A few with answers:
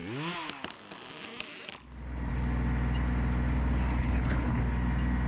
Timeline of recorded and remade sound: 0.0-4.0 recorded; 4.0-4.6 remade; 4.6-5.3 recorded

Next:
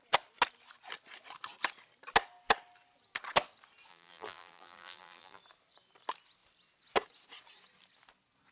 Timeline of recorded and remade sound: 0.0-3.9 recorded; 3.9-5.4 remade; 5.4-8.5 recorded

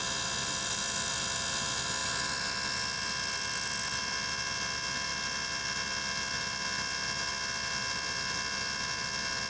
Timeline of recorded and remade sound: 0.0-9.5 recorded

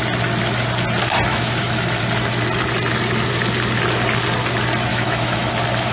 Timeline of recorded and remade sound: 0.0-1.3 recorded; 1.3-2.0 remade; 2.0-4.9 recorded; 4.9-5.5 remade; 5.5-5.9 recorded

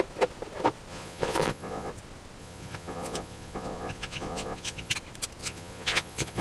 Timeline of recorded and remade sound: 0.0-0.9 recorded; 0.9-1.9 remade; 1.9-2.4 recorded; 2.4-4.9 remade; 4.9-5.4 recorded; 5.4-6.4 remade